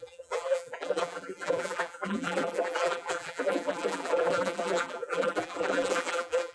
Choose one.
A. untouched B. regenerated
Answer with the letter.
B